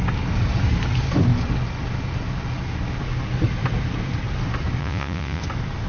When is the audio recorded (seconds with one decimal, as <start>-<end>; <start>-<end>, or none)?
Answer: 0.0-4.8; 5.4-5.9